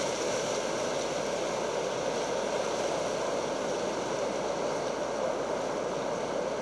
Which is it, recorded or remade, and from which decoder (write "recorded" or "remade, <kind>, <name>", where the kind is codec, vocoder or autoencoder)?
recorded